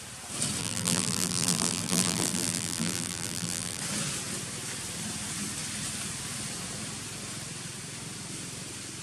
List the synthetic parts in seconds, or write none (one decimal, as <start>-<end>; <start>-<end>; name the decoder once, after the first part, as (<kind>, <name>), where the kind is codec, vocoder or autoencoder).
0.6-3.8 (vocoder, BigVGAN v2)